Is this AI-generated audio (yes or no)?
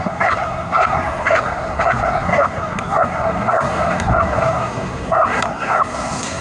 yes